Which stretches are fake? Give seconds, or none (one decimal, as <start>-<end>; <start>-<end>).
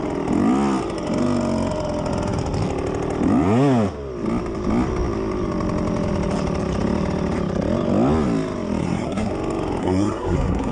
8.8-9.3; 9.8-10.7